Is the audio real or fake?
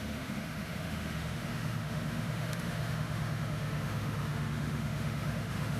fake